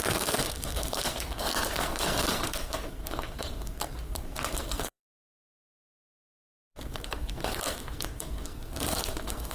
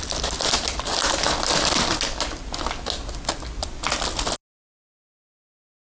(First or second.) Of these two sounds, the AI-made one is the first